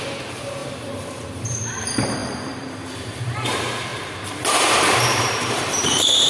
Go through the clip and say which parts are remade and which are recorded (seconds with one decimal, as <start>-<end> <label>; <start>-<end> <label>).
0.0-6.3 remade